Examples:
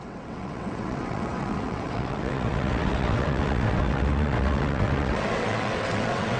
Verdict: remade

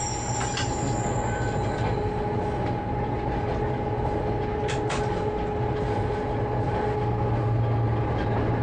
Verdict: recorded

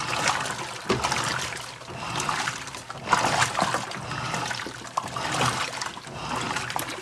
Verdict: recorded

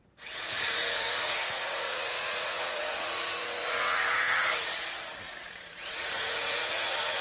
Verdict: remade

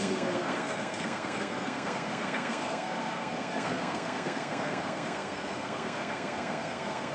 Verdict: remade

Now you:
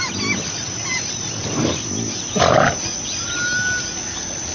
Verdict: recorded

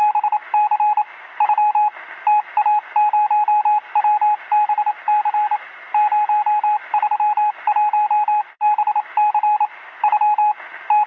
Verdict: recorded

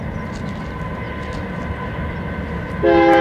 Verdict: recorded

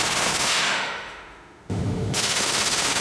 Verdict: remade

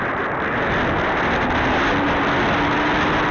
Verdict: recorded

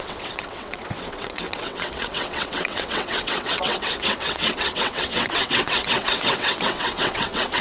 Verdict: remade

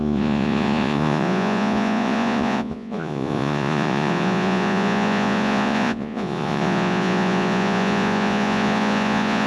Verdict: remade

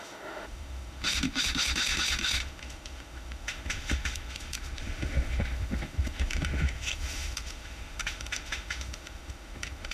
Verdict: remade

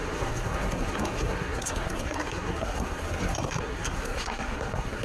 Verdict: remade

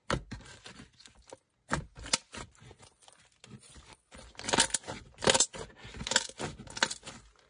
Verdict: recorded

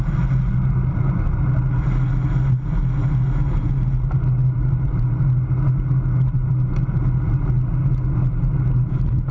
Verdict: recorded